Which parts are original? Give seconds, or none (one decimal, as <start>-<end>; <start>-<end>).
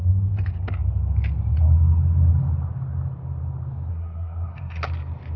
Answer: 0.0-3.9; 4.8-5.4